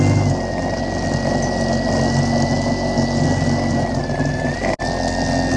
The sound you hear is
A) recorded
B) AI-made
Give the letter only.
A